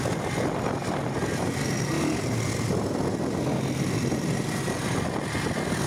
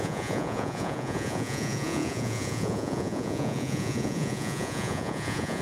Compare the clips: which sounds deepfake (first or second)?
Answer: second